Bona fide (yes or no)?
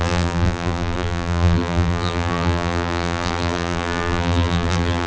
no